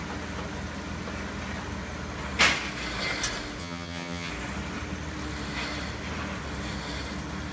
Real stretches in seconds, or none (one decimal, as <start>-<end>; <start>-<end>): 0.0-3.6; 4.3-7.5